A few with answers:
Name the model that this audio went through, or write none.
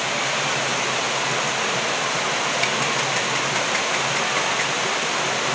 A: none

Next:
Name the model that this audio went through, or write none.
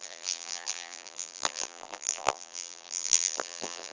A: vocoder, BigVGAN v2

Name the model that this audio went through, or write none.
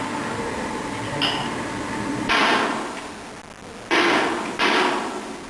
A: none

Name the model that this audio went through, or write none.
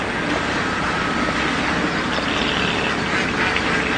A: none